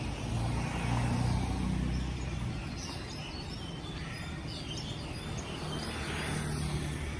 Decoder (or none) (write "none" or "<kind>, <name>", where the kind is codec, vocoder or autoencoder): none